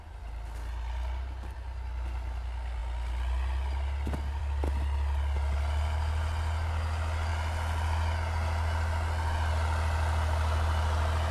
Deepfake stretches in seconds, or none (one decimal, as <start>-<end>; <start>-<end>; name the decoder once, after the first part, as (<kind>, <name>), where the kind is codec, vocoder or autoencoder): none